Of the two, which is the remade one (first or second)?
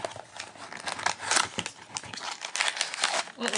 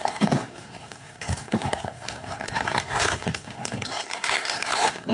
second